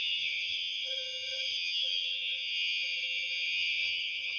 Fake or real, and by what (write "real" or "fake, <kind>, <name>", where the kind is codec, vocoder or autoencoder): fake, vocoder, HiFi-GAN